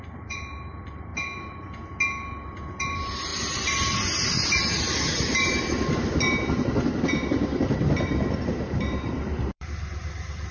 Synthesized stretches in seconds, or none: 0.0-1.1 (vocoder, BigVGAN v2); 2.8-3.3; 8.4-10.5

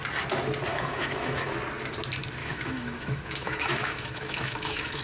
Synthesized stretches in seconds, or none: 0.7-1.5 (autoencoder, DAC-VAE); 2.4-5.0